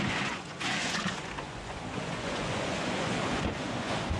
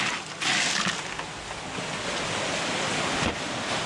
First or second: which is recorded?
second